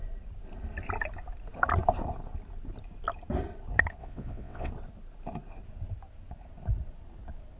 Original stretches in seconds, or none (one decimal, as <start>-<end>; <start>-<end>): 0.0-4.0; 4.7-7.6